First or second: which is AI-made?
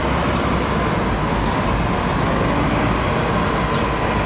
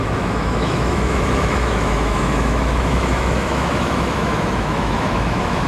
second